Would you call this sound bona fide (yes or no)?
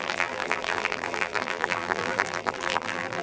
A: no